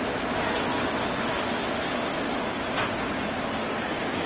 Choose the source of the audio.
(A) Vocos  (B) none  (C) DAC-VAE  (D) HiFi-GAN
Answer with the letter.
B